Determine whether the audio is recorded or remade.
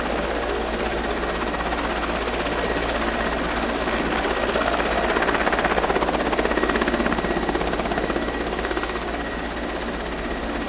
recorded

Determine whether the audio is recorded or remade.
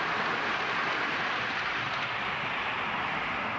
recorded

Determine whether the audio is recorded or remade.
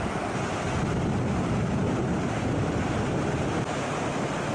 recorded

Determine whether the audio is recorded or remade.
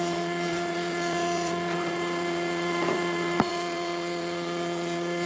remade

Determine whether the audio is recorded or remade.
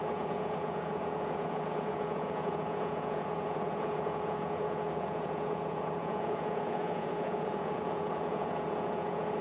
remade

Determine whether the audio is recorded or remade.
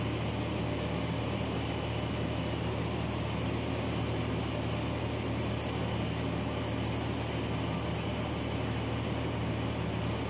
recorded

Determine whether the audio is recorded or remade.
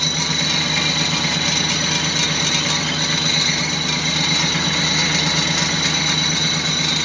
recorded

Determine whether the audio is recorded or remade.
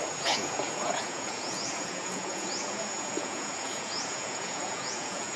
remade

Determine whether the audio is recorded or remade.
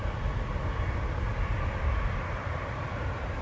recorded